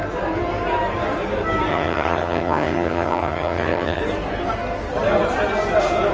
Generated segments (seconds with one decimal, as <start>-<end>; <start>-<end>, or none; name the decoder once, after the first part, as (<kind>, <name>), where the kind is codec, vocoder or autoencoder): 1.7-4.0 (vocoder, HiFi-GAN)